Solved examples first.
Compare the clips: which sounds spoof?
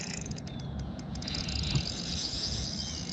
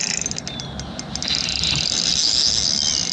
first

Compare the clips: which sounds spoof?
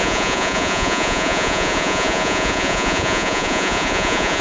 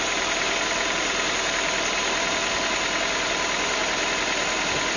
first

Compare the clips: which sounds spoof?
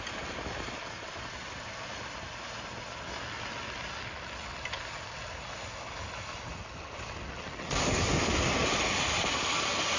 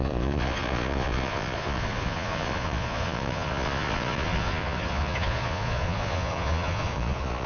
second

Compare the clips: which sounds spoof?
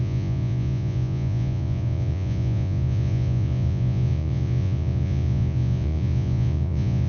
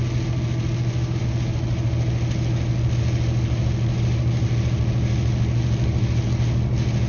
first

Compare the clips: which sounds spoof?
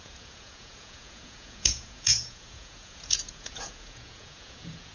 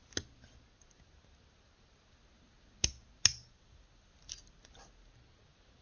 first